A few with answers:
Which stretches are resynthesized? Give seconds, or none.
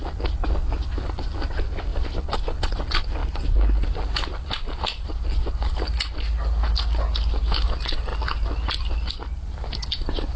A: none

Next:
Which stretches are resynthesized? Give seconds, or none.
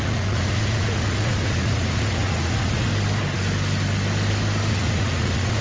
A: 0.0-2.9 (vocoder, Vocos); 4.7-5.6